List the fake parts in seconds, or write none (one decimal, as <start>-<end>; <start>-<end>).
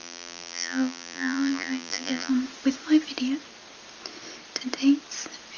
0.0-2.3